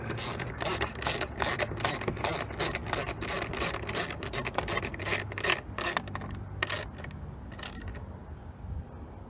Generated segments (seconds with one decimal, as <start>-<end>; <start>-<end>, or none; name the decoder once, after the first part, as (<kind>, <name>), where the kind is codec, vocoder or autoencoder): none